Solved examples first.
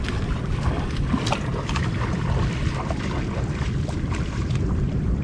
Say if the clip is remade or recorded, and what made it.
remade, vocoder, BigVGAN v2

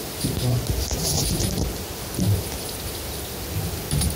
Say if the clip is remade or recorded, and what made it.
recorded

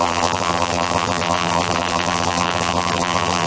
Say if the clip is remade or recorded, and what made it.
remade, vocoder, BigVGAN v2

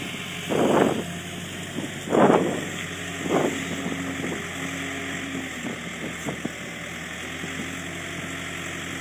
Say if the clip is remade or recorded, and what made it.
recorded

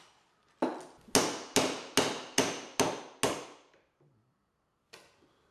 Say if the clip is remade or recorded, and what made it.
recorded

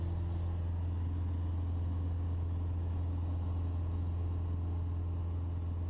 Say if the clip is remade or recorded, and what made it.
recorded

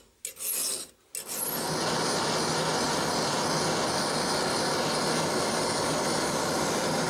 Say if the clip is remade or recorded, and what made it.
recorded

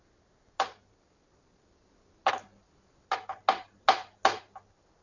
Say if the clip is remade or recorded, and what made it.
recorded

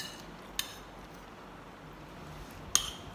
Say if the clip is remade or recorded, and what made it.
recorded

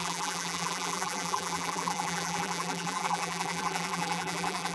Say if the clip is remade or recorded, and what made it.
remade, vocoder, BigVGAN v2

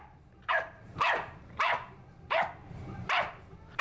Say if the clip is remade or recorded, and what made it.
remade, vocoder, BigVGAN v2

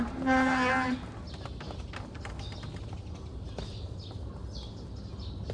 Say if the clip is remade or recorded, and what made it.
recorded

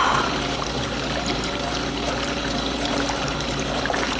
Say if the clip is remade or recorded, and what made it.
remade, vocoder, BigVGAN v2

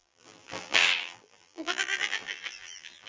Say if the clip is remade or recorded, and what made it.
remade, vocoder, BigVGAN v2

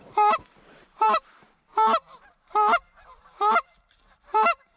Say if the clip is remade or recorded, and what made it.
remade, vocoder, BigVGAN v2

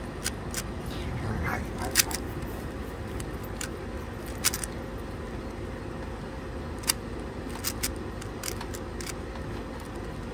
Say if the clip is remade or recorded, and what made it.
recorded